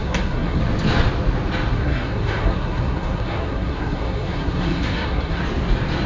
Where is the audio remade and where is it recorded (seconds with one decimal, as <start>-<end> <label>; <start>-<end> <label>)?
0.0-0.6 remade; 0.6-1.7 recorded; 1.7-5.4 remade; 5.4-6.1 recorded